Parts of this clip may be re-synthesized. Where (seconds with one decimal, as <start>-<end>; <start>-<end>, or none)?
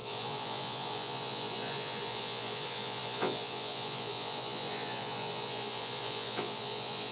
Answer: 0.0-7.1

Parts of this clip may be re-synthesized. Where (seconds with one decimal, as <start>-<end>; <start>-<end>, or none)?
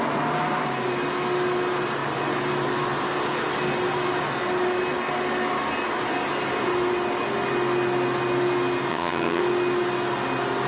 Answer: 8.9-9.4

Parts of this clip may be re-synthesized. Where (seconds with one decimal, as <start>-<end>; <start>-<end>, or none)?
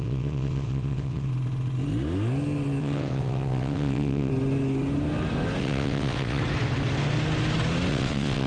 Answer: 0.0-1.3; 2.8-4.3; 5.6-6.4; 7.9-8.5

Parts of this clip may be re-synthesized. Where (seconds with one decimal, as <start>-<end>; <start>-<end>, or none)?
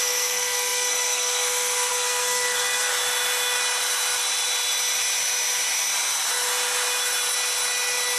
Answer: 0.0-2.9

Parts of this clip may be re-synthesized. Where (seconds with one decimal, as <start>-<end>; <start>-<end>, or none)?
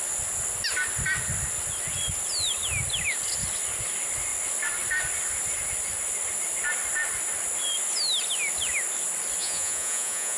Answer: 9.4-10.4